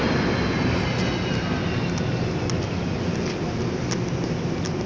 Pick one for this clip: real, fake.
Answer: real